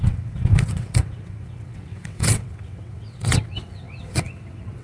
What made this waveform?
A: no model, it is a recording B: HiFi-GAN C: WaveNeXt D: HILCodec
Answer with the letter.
C